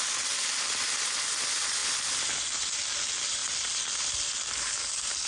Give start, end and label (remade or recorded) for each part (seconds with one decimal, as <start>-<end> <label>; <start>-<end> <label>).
0.0-5.3 recorded